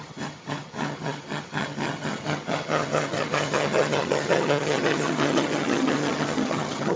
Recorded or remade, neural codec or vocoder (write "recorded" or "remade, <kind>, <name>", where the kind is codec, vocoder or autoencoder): remade, vocoder, HiFi-GAN